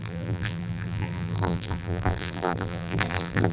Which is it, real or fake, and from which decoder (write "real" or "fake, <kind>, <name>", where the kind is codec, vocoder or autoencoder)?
fake, vocoder, BigVGAN v2